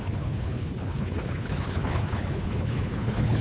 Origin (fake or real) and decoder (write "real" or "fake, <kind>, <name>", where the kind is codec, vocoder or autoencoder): fake, codec, HILCodec